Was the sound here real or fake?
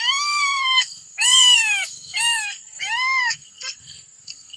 fake